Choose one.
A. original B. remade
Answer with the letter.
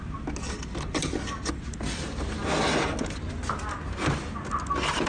A